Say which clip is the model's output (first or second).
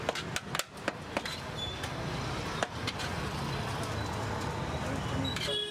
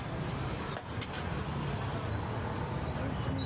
second